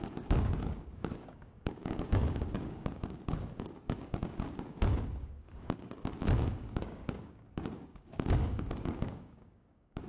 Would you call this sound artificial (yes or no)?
yes